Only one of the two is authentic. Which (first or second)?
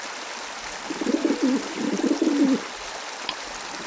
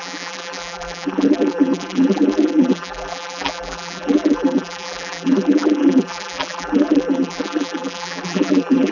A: first